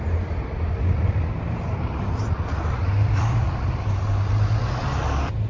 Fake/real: real